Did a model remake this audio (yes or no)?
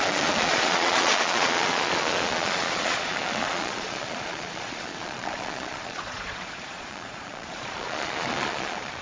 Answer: yes